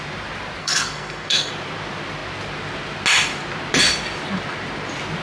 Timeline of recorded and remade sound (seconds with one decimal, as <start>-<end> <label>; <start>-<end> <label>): 0.0-0.6 recorded; 0.6-1.5 remade; 1.5-5.2 recorded

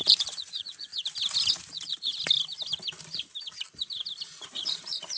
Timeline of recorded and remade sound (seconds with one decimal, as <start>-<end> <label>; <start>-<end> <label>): 0.0-0.9 remade; 0.9-1.5 recorded; 1.5-2.1 remade; 2.1-4.4 recorded; 4.4-5.2 remade

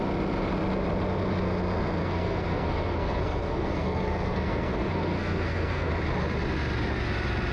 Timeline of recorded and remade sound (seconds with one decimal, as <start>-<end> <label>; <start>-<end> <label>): 0.0-2.0 recorded; 2.0-5.9 remade; 5.9-7.5 recorded

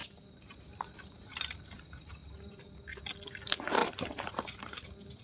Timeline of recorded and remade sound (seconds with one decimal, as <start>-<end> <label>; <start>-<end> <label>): 0.0-1.5 remade; 1.5-2.2 recorded; 2.2-3.0 remade; 3.0-3.8 recorded; 3.8-5.2 remade

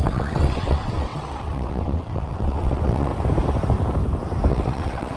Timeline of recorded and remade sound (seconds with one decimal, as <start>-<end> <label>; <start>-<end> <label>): 0.0-3.1 remade; 3.1-4.5 recorded; 4.5-5.2 remade

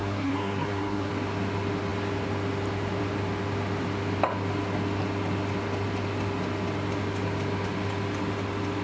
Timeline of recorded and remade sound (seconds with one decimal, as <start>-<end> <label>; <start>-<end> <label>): 0.0-1.1 remade; 1.1-8.8 recorded

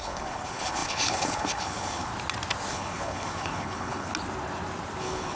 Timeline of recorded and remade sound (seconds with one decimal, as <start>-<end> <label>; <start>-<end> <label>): 0.0-2.1 remade; 2.1-2.7 recorded; 2.7-4.1 remade; 4.1-5.0 recorded; 5.0-5.4 remade

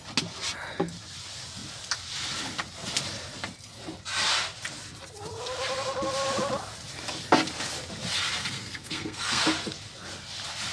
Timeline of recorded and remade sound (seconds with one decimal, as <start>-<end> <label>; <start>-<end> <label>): 0.0-8.4 recorded; 8.4-9.4 remade; 9.4-10.7 recorded